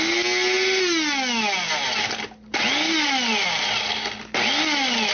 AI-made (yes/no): no